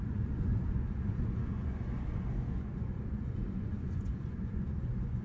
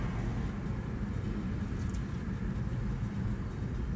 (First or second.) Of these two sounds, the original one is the second